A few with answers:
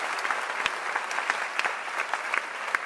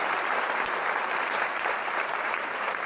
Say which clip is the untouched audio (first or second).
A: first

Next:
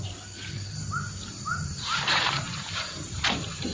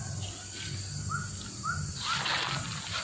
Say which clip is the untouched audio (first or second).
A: second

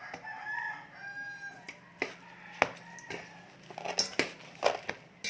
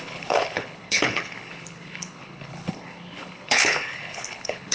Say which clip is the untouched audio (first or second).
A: first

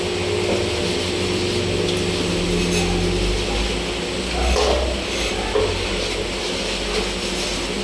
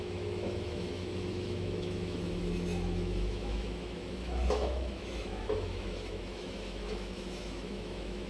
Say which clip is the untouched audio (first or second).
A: first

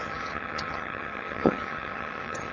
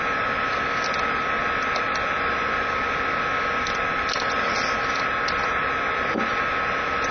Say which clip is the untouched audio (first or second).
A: second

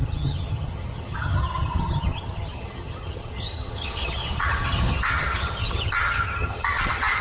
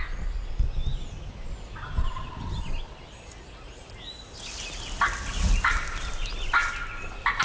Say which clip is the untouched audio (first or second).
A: second